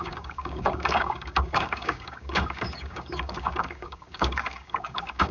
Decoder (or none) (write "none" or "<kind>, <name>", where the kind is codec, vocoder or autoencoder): codec, DAC